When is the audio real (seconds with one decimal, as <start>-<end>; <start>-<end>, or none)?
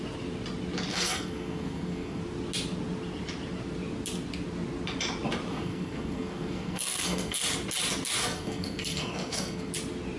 0.0-0.9; 2.2-5.5; 7.4-8.2; 9.7-10.2